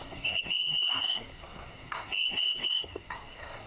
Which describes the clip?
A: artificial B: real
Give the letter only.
A